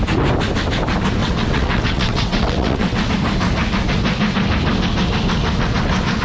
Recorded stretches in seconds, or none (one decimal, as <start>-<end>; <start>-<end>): 0.0-1.2; 3.1-6.2